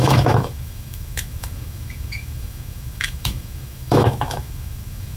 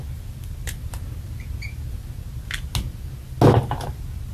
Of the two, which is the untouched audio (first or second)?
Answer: second